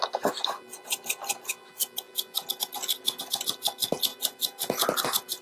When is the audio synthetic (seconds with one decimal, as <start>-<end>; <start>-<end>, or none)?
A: 4.1-5.0